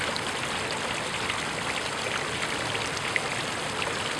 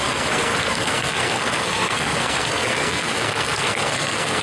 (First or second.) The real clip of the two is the first